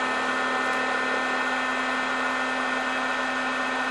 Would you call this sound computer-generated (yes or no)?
no